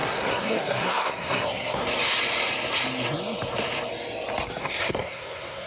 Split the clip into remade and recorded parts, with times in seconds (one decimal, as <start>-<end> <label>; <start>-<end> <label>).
0.0-1.8 remade; 1.8-4.6 recorded; 4.6-5.7 remade